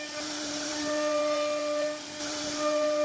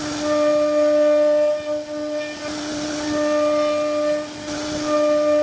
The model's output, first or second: first